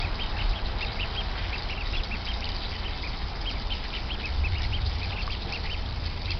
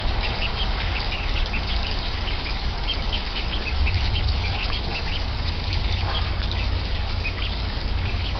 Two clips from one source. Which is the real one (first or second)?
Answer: first